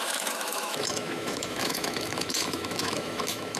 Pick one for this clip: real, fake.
fake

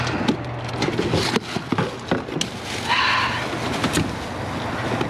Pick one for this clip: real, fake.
real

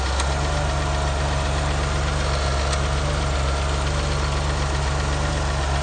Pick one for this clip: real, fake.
real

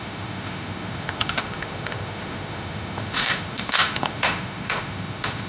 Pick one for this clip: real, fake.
fake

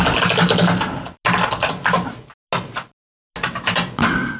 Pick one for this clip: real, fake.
real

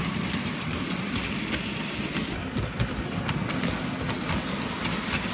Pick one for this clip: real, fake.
real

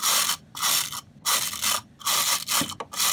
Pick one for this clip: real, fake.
real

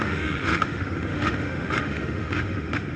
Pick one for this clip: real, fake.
fake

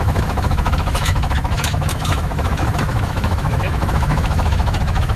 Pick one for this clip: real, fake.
fake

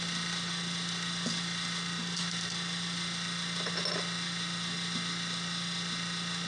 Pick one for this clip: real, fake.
real